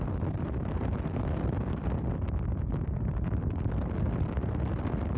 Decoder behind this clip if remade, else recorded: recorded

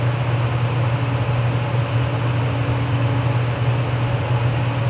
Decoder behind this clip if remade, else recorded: recorded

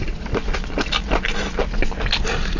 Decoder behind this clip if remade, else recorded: recorded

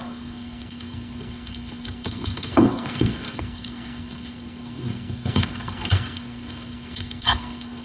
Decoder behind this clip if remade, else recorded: remade, codec, SNAC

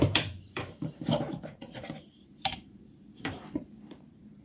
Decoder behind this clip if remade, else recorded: remade, vocoder, BigVGAN v2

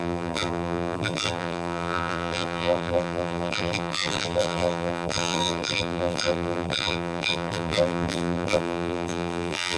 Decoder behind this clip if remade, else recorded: remade, vocoder, BigVGAN v2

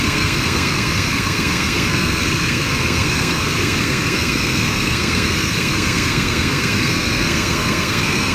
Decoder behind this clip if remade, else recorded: remade, codec, SNAC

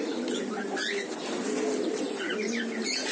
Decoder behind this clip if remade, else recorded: recorded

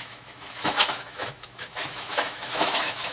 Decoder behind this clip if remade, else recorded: remade, autoencoder, DAC-VAE